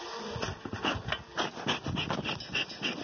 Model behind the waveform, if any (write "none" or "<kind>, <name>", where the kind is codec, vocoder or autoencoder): none